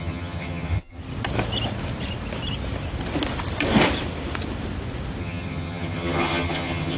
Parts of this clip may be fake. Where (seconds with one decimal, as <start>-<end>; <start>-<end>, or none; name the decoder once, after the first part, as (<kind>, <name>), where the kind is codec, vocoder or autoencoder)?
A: 0.0-1.0 (vocoder, HiFi-GAN); 5.2-7.0